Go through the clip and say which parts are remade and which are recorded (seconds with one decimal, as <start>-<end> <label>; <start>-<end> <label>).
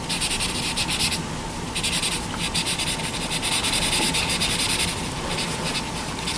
0.0-3.6 recorded; 3.6-4.3 remade; 4.3-6.4 recorded